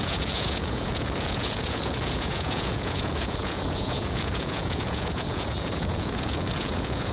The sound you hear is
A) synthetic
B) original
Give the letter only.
A